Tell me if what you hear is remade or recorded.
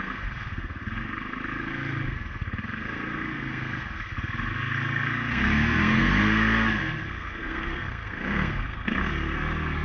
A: remade